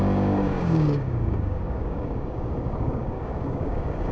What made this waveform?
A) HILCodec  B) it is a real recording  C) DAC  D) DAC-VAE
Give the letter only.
C